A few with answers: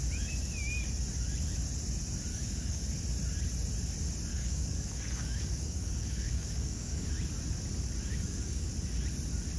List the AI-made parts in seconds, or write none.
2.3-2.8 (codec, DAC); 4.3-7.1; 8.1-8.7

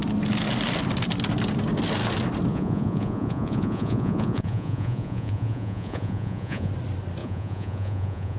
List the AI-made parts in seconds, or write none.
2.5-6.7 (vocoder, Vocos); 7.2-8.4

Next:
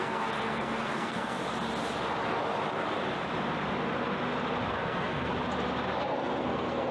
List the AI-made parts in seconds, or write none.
0.0-1.4 (codec, SNAC); 4.7-5.3; 6.0-6.9